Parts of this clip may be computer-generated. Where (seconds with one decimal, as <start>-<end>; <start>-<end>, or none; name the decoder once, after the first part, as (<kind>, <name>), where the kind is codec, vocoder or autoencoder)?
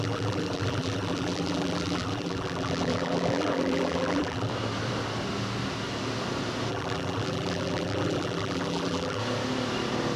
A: 0.0-4.5 (vocoder, BigVGAN v2); 6.7-9.2